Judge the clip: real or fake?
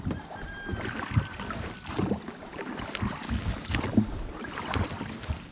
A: real